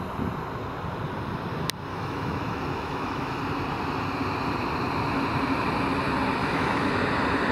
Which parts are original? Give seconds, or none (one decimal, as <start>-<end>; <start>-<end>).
0.0-1.9; 3.4-6.4; 6.9-7.5